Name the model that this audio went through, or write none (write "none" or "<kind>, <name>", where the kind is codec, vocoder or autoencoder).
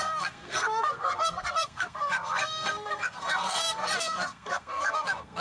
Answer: codec, SNAC